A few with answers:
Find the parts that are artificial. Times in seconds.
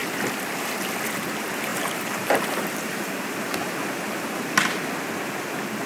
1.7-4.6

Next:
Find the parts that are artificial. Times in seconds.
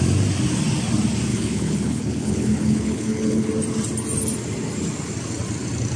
1.3-3.5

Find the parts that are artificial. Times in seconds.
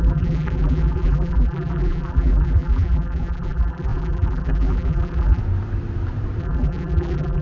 0.0-5.4; 6.4-7.4